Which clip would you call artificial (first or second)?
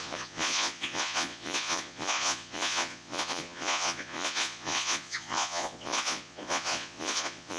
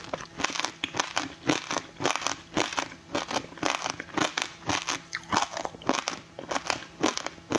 first